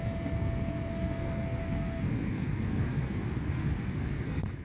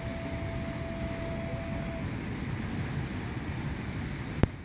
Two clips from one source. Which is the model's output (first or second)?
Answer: first